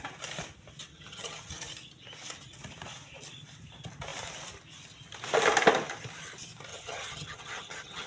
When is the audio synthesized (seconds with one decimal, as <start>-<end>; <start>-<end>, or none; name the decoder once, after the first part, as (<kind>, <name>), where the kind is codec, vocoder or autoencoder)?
0.9-1.5 (vocoder, HiFi-GAN); 6.7-8.1